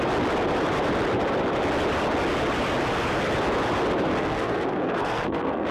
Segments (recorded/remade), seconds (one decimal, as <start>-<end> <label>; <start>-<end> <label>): 0.0-4.2 recorded; 4.2-5.7 remade